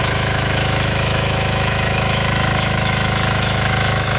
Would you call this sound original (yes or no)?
no